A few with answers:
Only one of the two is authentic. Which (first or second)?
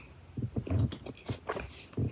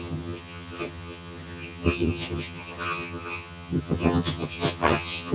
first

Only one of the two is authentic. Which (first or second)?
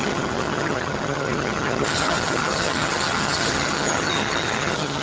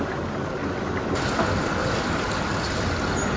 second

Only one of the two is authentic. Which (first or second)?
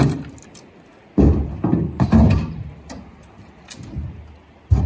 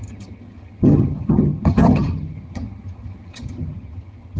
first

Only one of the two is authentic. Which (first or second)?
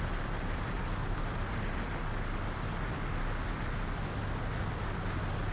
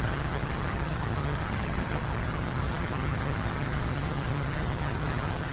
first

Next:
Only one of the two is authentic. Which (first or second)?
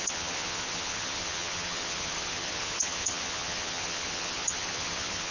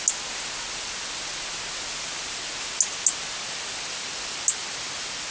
second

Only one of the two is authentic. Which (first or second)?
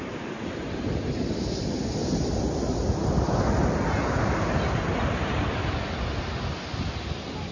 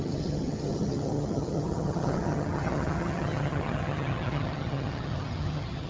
first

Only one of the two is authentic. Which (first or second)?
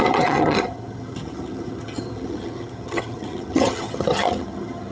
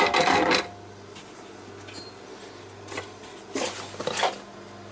second